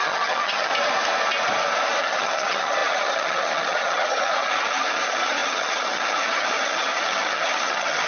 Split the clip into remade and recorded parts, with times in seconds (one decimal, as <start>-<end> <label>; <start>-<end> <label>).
0.0-0.7 remade; 0.7-2.0 recorded; 2.0-8.1 remade